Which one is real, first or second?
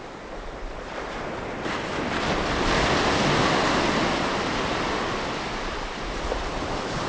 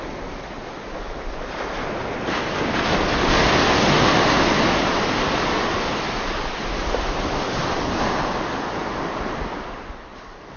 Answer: second